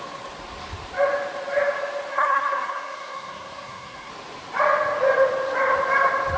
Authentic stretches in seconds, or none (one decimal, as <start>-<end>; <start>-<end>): 0.0-2.1; 4.1-6.4